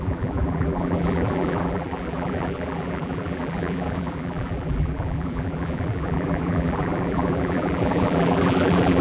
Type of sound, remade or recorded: remade